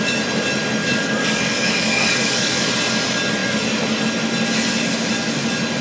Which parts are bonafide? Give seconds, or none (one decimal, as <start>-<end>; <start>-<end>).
0.0-0.8; 2.7-5.8

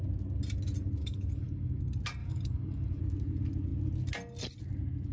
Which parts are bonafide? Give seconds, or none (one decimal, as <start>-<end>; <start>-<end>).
0.0-1.0; 1.8-2.2; 3.0-5.1

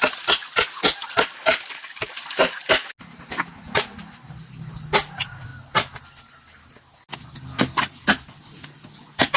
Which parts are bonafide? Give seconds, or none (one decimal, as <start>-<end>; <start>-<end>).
0.0-9.4